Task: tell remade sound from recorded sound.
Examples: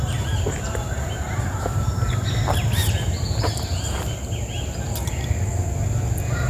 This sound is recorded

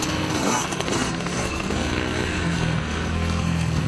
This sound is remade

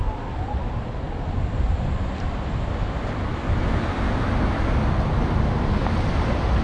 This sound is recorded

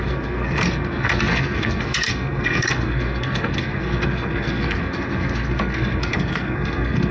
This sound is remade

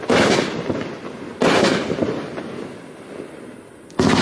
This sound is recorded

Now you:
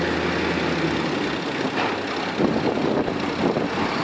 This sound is recorded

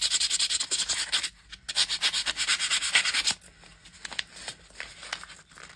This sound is recorded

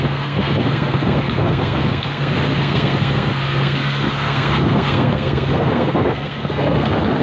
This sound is remade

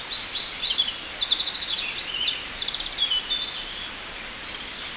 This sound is recorded